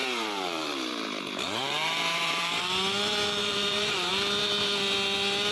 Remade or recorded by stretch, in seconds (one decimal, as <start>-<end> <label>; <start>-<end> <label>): 0.0-2.6 remade; 2.6-3.4 recorded; 3.4-4.1 remade; 4.1-5.5 recorded